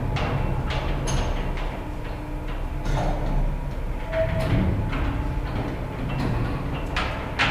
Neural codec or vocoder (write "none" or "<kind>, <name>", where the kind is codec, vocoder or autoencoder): none